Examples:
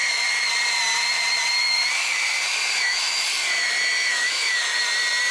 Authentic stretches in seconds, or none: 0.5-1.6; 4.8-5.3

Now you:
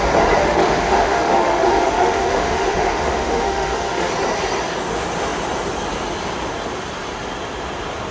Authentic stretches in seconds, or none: 0.0-0.4; 4.1-8.1